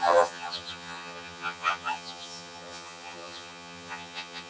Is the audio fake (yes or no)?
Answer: yes